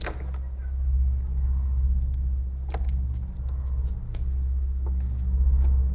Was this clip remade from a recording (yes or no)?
no